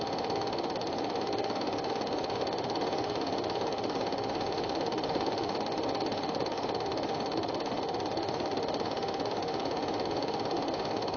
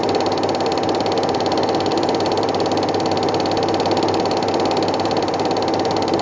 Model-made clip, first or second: first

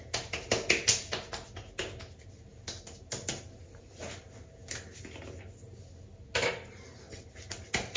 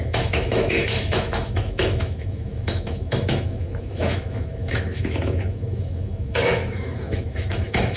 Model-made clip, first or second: second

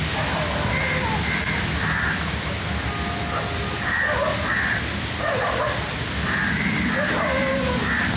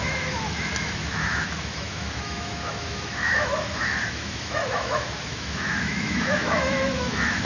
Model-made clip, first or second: second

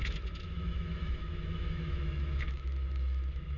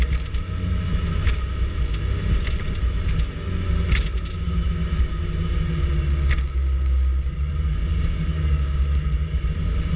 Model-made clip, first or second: first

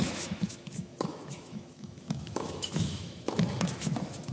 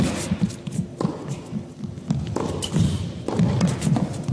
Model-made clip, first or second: first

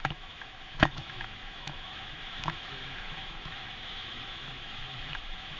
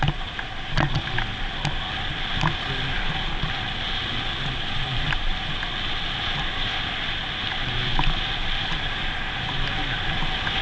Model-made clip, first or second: first